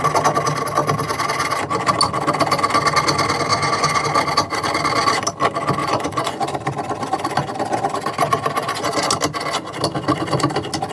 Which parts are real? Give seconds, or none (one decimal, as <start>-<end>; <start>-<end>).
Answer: 0.0-3.5; 4.0-5.8; 6.4-10.9